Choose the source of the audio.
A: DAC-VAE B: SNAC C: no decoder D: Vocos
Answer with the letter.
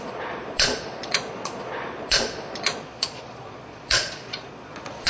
D